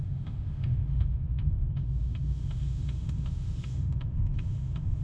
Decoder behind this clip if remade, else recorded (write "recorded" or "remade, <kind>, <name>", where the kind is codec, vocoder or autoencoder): remade, autoencoder, DAC-VAE